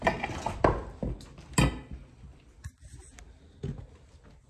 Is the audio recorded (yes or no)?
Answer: yes